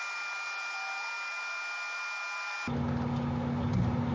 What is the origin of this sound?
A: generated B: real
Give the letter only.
B